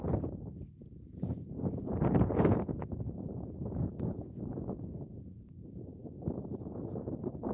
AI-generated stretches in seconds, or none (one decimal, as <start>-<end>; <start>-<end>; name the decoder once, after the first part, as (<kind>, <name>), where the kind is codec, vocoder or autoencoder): 0.8-6.0 (vocoder, Vocos)